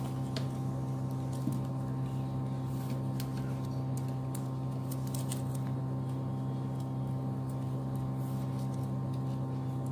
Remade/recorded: recorded